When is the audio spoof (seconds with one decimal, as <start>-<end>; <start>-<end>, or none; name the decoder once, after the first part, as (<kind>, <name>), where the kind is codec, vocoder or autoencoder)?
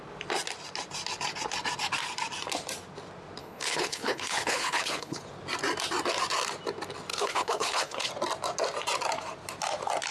3.4-5.2 (codec, HILCodec); 7.1-8.1